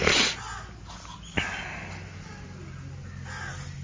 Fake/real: real